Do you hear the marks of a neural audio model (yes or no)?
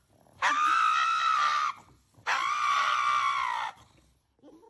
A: no